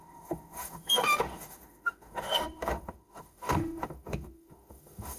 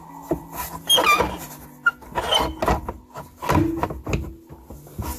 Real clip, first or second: second